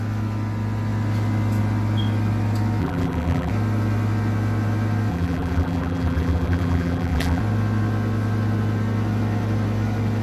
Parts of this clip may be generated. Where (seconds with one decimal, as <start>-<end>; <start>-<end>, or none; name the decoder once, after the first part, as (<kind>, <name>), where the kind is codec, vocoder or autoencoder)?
2.8-3.5 (vocoder, BigVGAN v2); 5.1-7.4